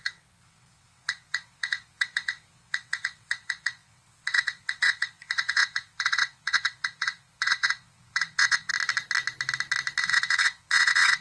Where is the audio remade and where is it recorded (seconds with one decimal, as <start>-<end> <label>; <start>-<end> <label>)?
0.0-8.7 remade; 8.7-10.0 recorded; 10.0-11.2 remade